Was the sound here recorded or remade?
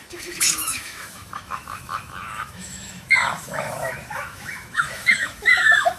remade